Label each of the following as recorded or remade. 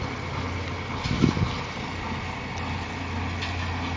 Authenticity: recorded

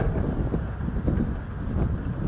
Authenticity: recorded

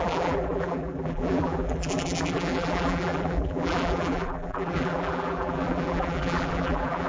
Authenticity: remade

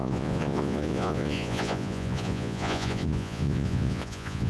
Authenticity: remade